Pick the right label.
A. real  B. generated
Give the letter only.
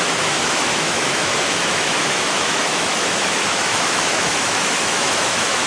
B